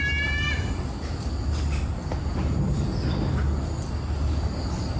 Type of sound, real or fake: real